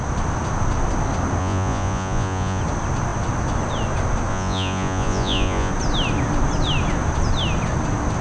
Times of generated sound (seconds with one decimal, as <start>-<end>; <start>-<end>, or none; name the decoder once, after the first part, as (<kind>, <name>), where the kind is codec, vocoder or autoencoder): 1.4-2.6 (vocoder, Vocos); 4.3-5.7